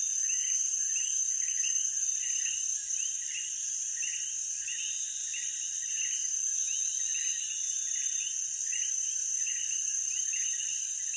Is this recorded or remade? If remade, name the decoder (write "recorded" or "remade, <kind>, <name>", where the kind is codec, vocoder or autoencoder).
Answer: recorded